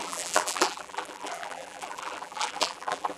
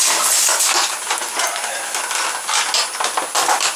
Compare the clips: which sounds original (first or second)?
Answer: second